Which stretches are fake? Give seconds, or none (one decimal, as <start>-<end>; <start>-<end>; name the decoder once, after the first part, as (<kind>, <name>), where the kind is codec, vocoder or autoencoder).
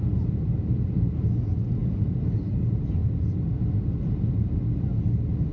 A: 1.8-2.5 (vocoder, BigVGAN v2)